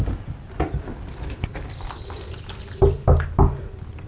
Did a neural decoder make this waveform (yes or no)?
no